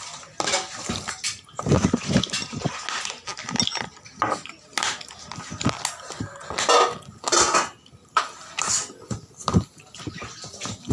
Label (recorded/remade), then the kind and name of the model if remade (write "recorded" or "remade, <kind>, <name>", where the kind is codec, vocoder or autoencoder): recorded